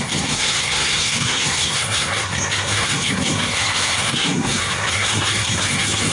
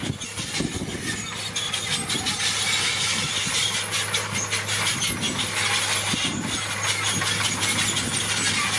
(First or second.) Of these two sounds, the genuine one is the second